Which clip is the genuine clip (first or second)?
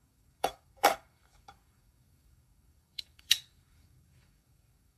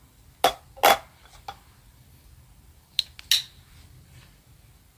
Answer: second